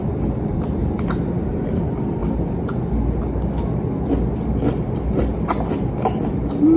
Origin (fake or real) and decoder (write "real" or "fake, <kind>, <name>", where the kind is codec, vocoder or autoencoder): real